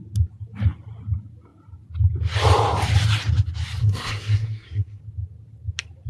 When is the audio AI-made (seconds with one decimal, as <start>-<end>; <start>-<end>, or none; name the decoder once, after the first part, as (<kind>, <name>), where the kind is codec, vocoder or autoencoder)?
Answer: 3.8-5.0 (codec, SNAC)

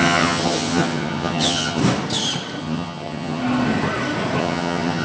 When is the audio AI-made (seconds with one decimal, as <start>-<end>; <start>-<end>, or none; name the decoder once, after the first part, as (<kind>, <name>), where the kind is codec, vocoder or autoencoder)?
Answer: 0.0-1.8 (vocoder, HiFi-GAN); 2.6-3.4; 4.4-5.0

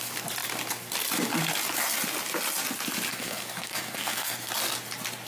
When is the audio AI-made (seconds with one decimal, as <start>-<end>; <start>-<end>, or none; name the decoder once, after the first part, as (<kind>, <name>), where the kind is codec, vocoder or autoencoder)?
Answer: 3.1-4.5 (codec, SNAC)

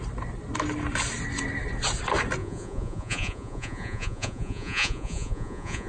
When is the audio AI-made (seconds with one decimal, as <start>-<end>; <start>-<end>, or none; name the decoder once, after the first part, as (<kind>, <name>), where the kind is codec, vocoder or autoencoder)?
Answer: 2.4-5.9 (vocoder, Vocos)

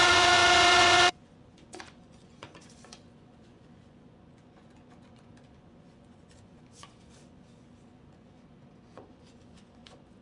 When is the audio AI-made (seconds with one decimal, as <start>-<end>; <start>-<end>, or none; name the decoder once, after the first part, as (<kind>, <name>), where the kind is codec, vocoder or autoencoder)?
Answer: 0.0-10.2 (vocoder, Vocos)

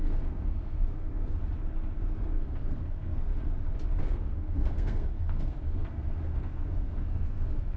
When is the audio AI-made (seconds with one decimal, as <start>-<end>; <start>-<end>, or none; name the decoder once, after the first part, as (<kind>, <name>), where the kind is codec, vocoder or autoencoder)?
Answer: 0.0-1.4 (codec, SNAC); 2.2-3.3; 4.0-7.8